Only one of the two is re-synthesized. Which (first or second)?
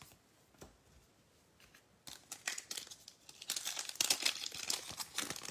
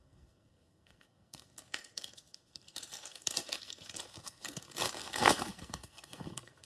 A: second